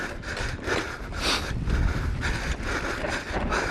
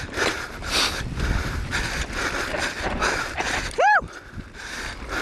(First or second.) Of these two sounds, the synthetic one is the second